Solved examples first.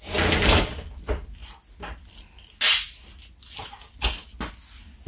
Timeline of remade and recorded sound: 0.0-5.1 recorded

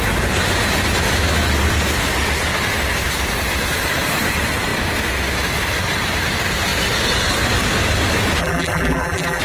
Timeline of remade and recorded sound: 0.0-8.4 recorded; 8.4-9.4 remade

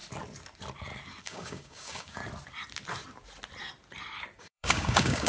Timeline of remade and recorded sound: 0.0-1.2 recorded; 1.2-2.2 remade; 2.2-4.4 recorded; 4.4-5.3 remade

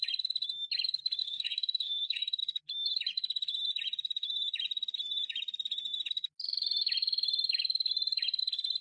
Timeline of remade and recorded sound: 0.0-1.2 recorded; 1.2-2.4 remade; 2.4-8.8 recorded

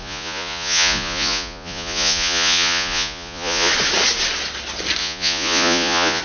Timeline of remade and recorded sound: 0.0-3.7 remade; 3.7-5.0 recorded; 5.0-6.2 remade

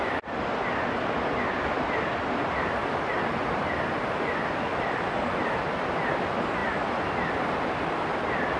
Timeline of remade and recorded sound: 0.0-8.6 recorded

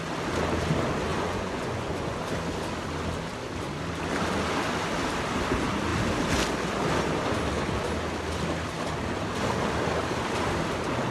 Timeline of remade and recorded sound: 0.0-1.1 recorded; 1.1-2.2 remade; 2.2-11.1 recorded